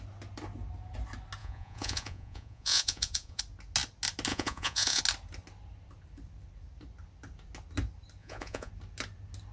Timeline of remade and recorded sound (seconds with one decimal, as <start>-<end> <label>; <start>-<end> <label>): 0.0-1.4 recorded; 1.4-3.4 remade; 3.4-4.3 recorded; 4.3-5.0 remade; 5.0-8.2 recorded; 8.2-8.7 remade; 8.7-9.5 recorded